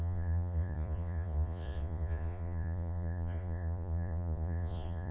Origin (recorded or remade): remade